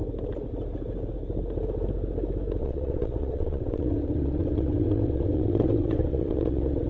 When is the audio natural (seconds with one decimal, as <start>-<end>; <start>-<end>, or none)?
0.0-2.6